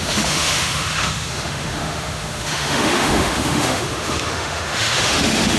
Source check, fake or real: fake